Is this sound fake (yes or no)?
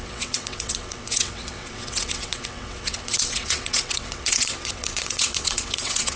yes